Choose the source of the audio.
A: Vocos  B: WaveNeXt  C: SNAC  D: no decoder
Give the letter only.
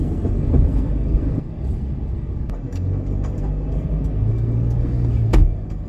C